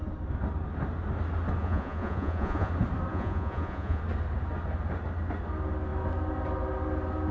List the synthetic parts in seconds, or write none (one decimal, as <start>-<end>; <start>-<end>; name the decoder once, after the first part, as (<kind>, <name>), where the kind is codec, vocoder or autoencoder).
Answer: 1.6-2.7 (vocoder, Vocos); 3.1-4.0